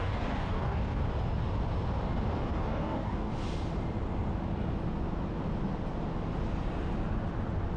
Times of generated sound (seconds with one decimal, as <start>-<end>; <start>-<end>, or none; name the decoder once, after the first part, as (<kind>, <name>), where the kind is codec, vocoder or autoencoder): 0.0-1.0 (codec, DAC); 2.4-3.3